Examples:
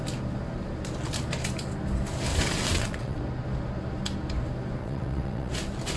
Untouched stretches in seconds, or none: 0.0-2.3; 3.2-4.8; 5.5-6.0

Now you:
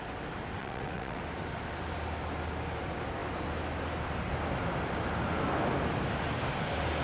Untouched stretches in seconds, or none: 0.0-0.6; 1.2-7.0

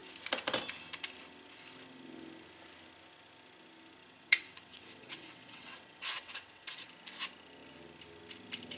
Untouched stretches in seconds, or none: 0.0-4.0; 6.9-8.8

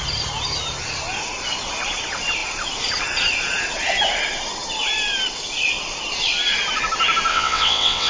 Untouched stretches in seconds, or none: 0.0-7.3

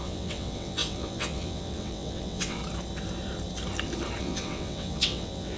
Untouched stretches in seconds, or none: 2.6-4.2

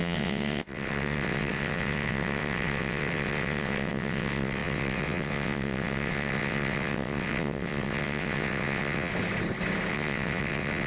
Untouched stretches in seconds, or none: 9.1-9.9

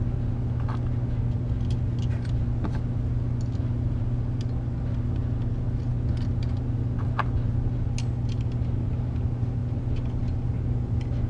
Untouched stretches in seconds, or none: 0.0-11.3